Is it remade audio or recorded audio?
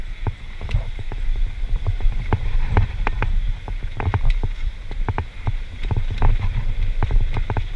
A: remade